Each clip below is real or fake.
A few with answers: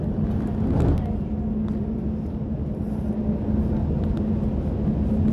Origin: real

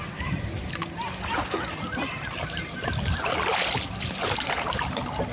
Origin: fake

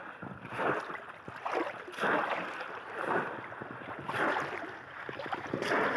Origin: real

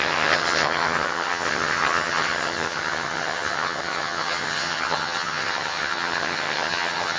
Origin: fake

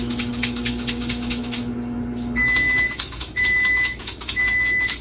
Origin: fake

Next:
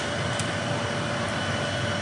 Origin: real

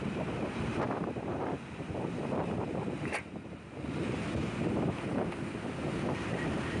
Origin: fake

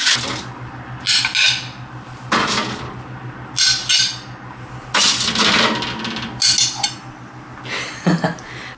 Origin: real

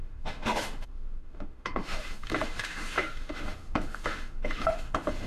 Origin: fake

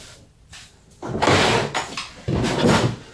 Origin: real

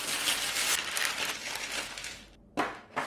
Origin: real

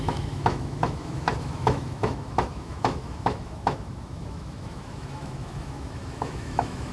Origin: fake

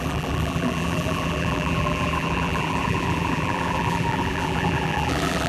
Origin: fake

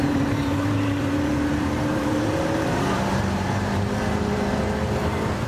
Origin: fake